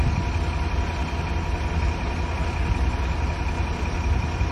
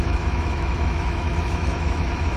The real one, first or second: first